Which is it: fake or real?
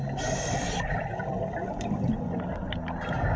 real